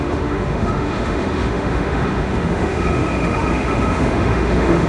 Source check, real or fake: fake